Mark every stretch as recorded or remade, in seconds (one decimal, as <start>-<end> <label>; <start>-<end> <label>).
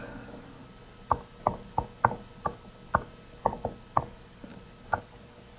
0.0-0.6 remade; 0.6-4.0 recorded; 4.0-4.5 remade; 4.5-5.0 recorded; 5.0-5.6 remade